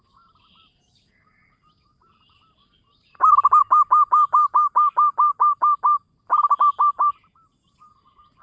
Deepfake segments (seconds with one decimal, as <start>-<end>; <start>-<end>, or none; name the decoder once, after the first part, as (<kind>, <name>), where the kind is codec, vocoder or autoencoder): none